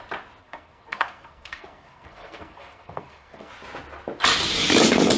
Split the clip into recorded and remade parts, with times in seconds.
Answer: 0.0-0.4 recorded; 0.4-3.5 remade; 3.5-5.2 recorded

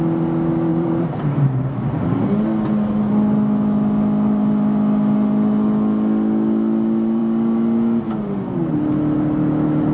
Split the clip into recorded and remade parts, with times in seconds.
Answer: 0.0-0.7 recorded; 0.7-2.0 remade; 2.0-9.9 recorded